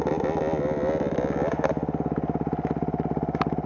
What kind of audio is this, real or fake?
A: real